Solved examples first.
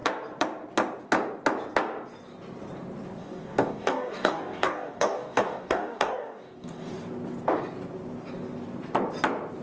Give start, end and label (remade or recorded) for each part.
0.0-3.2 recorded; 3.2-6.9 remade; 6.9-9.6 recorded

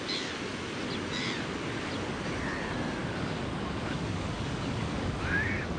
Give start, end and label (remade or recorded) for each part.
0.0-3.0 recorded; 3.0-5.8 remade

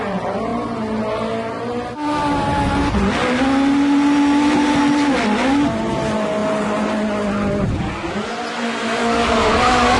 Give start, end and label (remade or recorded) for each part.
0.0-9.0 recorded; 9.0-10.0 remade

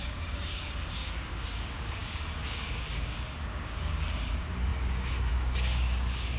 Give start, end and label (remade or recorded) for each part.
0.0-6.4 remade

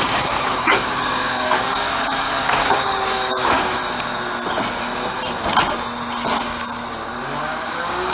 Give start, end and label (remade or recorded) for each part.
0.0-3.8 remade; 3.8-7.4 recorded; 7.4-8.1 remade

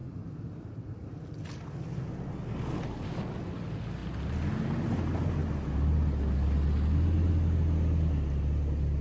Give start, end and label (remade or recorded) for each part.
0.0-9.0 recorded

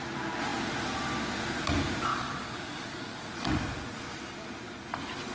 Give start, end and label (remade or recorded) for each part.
0.0-2.1 recorded; 2.1-3.3 remade; 3.3-5.3 recorded